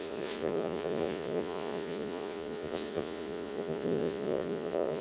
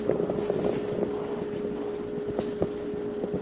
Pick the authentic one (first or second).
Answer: second